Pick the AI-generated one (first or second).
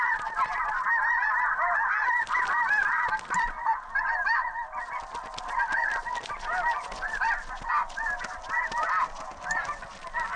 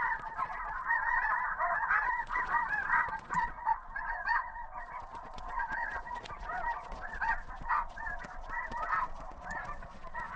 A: second